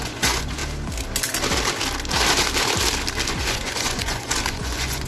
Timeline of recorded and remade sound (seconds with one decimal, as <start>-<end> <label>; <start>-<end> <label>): 0.0-0.6 remade; 0.6-3.3 recorded; 3.3-5.1 remade